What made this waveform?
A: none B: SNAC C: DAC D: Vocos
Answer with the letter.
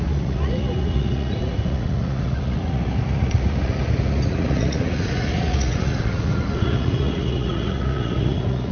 D